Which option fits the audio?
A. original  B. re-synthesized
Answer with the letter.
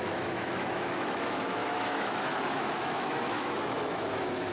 B